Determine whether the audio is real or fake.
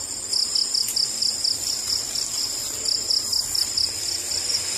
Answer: real